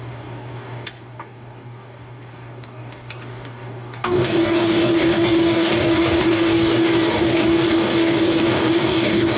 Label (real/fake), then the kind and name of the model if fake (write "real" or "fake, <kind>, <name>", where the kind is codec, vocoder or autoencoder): fake, codec, DAC